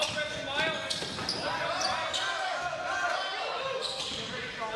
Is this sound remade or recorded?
recorded